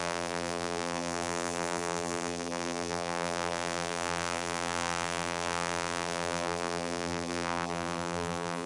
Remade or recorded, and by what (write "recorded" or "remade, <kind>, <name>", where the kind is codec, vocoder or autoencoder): remade, vocoder, BigVGAN v2